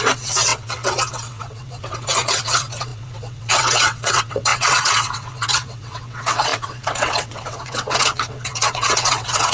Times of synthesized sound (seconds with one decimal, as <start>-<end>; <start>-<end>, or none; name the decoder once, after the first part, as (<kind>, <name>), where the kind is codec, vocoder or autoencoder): 0.0-9.5 (vocoder, WaveNeXt)